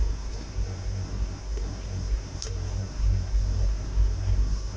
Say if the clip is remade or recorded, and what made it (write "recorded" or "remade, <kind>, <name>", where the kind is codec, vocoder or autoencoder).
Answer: remade, codec, SNAC